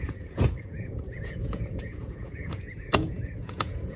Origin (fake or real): fake